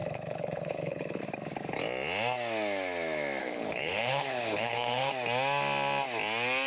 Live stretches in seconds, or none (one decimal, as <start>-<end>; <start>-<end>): 1.2-3.4; 5.1-6.7